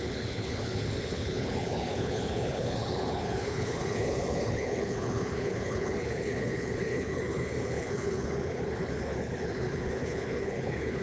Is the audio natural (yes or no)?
no